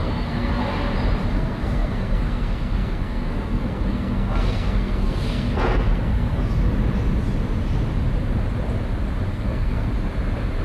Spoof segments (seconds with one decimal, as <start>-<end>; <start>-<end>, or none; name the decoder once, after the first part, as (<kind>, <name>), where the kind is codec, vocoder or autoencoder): 0.0-0.6 (codec, SNAC); 1.3-6.5; 9.3-9.9